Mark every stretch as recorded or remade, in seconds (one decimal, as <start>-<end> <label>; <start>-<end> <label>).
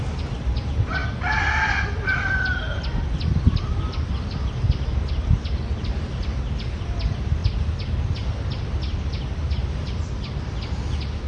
0.0-11.3 recorded